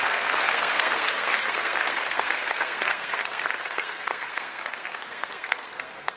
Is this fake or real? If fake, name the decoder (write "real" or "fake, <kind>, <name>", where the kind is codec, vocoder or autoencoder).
fake, codec, SNAC